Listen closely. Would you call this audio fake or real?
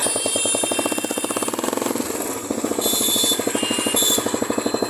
real